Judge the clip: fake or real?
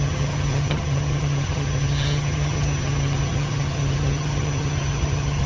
fake